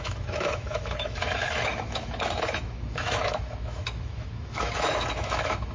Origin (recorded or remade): remade